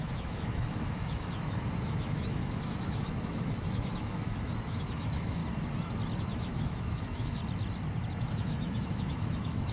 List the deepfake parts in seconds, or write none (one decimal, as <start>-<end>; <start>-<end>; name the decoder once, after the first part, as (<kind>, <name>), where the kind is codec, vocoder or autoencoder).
0.0-5.4 (autoencoder, DAC-VAE); 6.2-7.4; 8.3-9.7